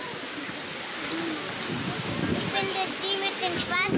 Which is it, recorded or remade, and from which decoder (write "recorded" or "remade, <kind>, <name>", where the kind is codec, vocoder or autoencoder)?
recorded